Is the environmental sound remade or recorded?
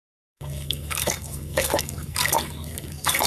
remade